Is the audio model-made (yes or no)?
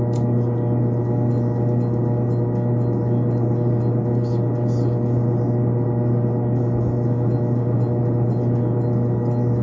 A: no